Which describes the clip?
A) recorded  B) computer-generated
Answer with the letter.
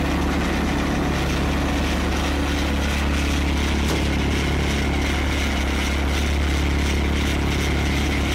A